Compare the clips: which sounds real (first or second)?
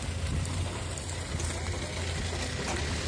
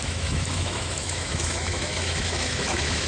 first